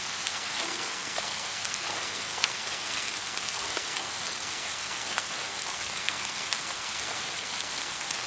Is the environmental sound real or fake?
fake